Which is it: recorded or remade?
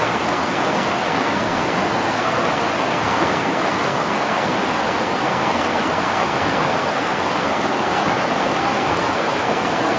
remade